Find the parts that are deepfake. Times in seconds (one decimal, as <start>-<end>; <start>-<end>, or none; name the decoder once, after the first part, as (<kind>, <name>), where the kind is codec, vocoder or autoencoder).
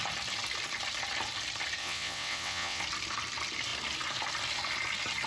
1.8-2.8 (vocoder, WaveNeXt)